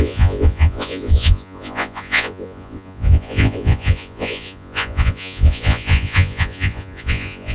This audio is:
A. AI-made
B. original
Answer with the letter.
A